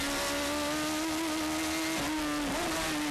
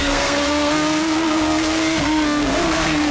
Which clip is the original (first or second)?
first